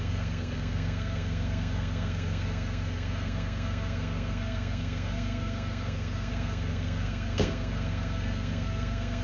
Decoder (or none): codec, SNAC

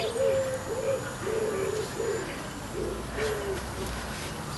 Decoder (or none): none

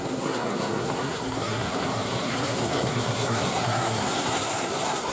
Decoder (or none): codec, SNAC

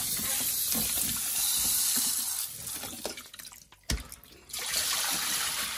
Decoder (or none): none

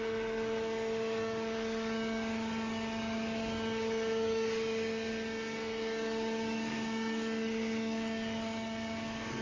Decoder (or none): codec, DAC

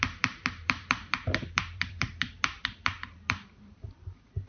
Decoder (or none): vocoder, BigVGAN v2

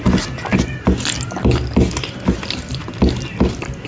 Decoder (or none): none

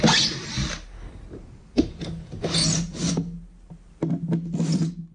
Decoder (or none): none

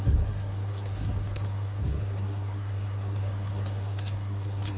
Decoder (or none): codec, SNAC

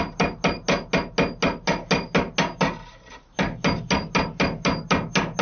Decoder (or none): none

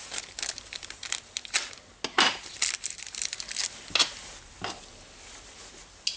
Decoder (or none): none